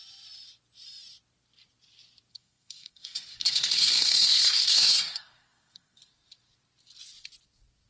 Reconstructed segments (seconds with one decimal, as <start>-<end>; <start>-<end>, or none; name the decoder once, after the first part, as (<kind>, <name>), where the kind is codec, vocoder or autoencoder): 2.3-6.0 (codec, SNAC)